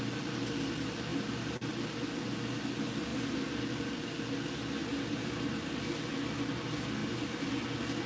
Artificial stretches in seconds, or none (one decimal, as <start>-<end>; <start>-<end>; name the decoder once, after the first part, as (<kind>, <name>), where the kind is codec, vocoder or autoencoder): 1.1-1.7 (vocoder, BigVGAN v2); 3.1-3.6; 4.8-5.8; 7.0-7.5